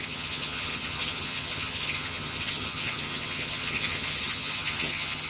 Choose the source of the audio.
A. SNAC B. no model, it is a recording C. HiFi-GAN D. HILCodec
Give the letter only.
C